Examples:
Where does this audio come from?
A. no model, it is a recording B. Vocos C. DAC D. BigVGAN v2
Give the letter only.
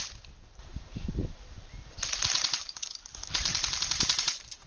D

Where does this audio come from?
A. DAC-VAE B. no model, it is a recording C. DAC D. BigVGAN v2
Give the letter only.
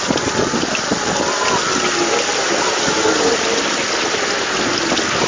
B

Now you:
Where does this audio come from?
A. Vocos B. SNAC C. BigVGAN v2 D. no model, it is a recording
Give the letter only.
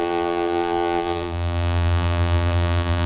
C